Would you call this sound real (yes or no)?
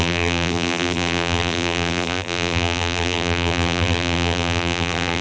no